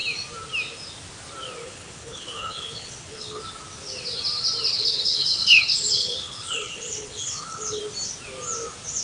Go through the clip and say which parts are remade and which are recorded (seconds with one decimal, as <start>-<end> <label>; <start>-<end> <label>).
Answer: 0.0-1.6 recorded; 1.6-3.4 remade; 3.4-4.7 recorded; 4.7-7.8 remade; 7.8-9.0 recorded